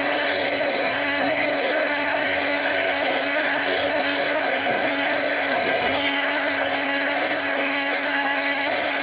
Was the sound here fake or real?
fake